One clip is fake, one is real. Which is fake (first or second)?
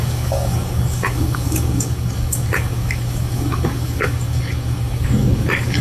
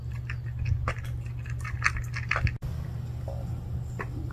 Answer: first